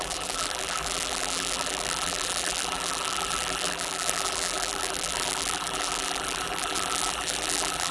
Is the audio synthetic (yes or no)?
yes